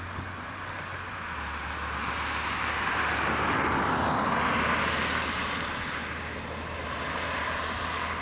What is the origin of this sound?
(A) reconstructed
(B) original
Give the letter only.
B